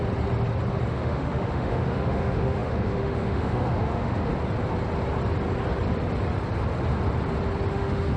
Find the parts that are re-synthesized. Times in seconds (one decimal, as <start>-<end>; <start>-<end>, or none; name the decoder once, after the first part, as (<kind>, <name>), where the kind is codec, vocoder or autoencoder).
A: 0.9-4.3 (autoencoder, DAC-VAE); 7.7-8.2